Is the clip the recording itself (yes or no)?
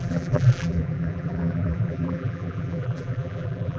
no